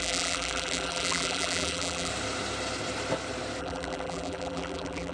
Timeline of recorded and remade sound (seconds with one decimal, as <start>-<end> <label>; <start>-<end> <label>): 0.0-2.1 remade; 2.1-3.6 recorded; 3.6-5.1 remade